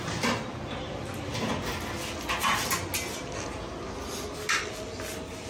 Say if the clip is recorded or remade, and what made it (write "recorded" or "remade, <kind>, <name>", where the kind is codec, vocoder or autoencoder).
recorded